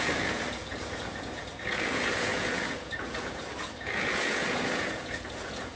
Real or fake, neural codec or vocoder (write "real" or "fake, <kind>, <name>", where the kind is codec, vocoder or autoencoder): fake, vocoder, Vocos